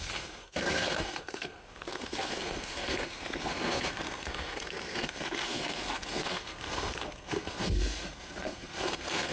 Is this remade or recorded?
remade